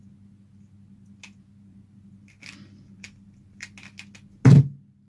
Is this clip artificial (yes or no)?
no